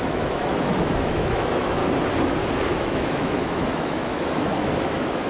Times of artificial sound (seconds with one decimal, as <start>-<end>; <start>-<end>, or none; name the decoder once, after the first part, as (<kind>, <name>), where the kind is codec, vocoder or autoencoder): 0.0-1.8 (autoencoder, DAC-VAE); 2.7-5.3